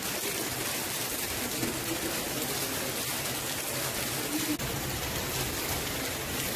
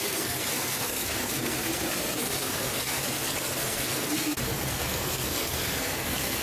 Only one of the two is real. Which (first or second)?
first